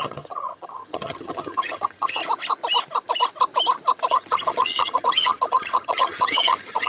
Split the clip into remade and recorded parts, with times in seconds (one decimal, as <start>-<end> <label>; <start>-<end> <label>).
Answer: 0.0-2.2 remade; 2.2-4.1 recorded; 4.1-6.9 remade